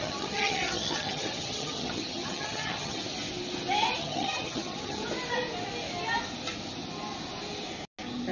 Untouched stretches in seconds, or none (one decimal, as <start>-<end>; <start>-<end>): 3.0-4.0; 5.0-8.3